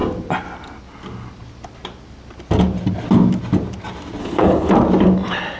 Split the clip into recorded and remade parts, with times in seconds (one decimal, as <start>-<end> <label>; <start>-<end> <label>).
0.0-4.2 recorded; 4.2-4.7 remade; 4.7-5.6 recorded